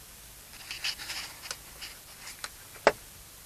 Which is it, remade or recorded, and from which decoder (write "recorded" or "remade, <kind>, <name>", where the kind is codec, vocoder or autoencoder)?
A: recorded